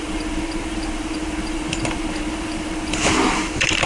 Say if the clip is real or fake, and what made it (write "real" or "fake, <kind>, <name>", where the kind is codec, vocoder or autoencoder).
fake, vocoder, BigVGAN v2